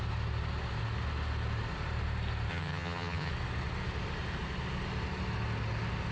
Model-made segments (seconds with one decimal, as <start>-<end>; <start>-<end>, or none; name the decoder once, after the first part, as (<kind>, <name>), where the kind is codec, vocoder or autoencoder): 2.5-3.3 (vocoder, HiFi-GAN)